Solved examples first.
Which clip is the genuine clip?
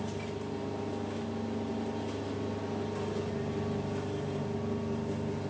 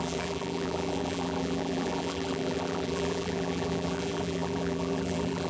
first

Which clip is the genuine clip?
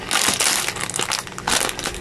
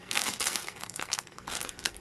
first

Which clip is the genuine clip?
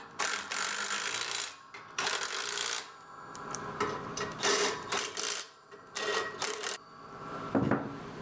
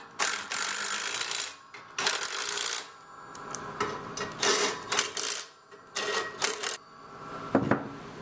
second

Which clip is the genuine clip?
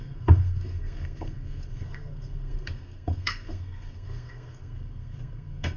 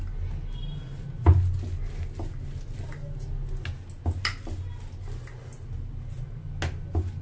second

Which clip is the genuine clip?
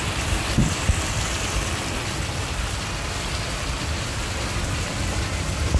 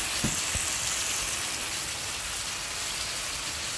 second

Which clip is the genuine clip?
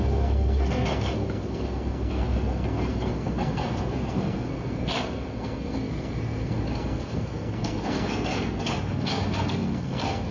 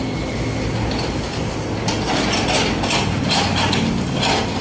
second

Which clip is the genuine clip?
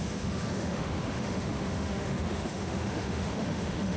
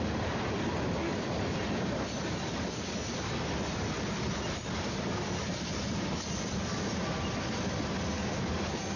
second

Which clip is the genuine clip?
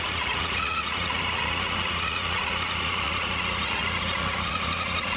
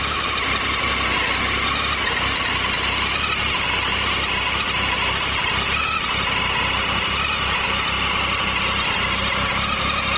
second